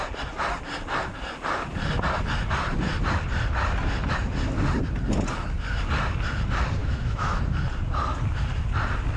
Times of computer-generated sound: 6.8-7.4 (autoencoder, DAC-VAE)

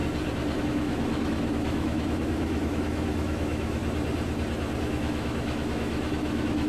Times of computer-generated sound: 0.6-3.8 (autoencoder, DAC-VAE); 4.8-6.7

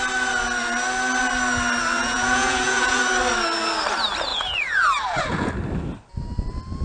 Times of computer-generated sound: 2.0-3.0 (vocoder, Vocos); 4.3-5.5